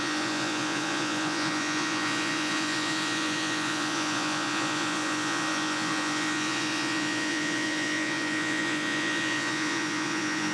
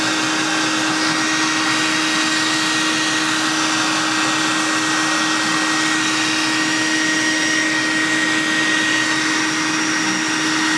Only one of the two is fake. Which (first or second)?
first